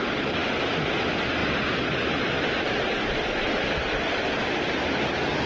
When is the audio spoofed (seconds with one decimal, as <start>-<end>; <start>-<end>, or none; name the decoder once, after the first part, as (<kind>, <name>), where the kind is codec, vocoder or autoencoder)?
none